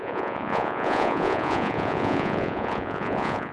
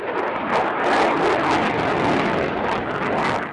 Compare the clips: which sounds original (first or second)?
second